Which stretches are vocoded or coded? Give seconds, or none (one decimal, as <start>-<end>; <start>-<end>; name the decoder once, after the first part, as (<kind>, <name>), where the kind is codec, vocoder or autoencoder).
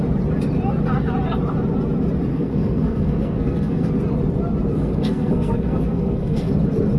2.3-3.9 (codec, SNAC); 4.7-6.5